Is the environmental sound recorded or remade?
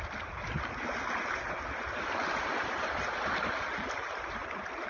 recorded